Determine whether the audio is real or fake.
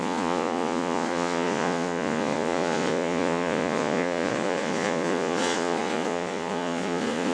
fake